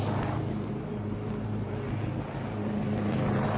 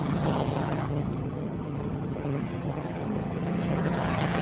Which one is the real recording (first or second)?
first